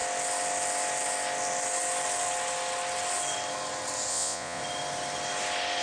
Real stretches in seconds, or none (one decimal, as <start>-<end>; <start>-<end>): 0.0-4.1; 4.6-5.8